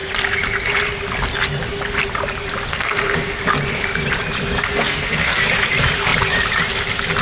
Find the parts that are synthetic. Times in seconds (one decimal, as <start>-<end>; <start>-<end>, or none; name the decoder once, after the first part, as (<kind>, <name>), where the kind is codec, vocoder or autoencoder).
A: 2.7-3.4 (codec, SNAC); 4.7-5.4